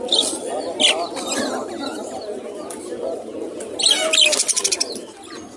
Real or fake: real